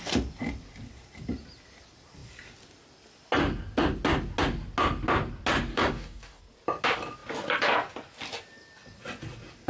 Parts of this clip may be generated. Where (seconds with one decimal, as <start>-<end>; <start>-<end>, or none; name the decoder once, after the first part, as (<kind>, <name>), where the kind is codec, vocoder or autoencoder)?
5.7-6.4 (codec, DAC)